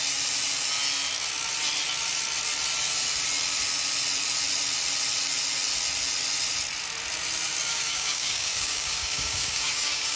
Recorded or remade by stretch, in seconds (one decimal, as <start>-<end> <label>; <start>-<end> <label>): 0.0-7.7 recorded; 7.7-10.2 remade